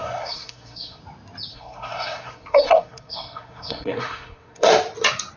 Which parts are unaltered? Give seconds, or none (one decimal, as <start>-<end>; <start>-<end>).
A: 1.0-1.5; 4.7-5.4